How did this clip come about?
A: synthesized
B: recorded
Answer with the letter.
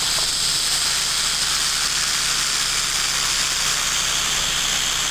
B